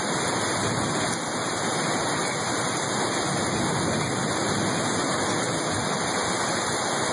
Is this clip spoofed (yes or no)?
no